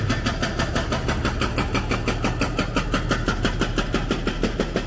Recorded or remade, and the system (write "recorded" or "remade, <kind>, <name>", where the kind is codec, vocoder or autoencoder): recorded